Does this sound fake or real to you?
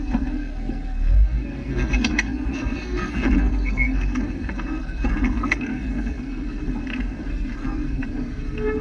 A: fake